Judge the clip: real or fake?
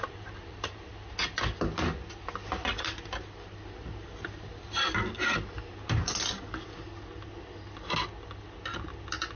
real